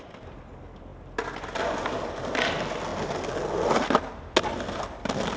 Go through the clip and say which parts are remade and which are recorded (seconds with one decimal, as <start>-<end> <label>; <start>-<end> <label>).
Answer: 0.0-5.4 recorded